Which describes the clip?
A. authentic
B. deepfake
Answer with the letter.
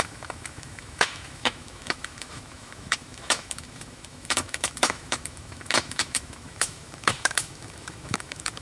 B